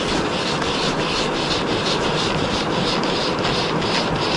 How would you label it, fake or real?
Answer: real